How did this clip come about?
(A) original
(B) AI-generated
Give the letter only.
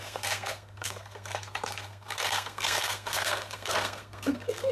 B